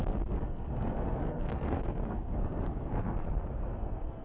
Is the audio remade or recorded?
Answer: remade